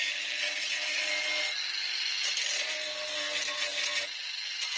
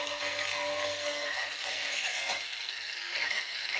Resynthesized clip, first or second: second